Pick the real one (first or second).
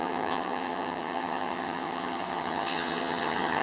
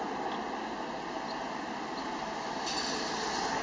second